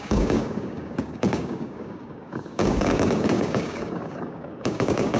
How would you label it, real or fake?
fake